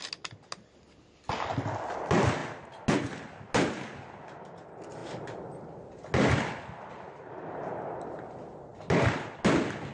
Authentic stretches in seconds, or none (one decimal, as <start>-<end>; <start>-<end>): 0.0-9.9